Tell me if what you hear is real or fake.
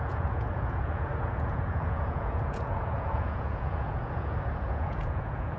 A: fake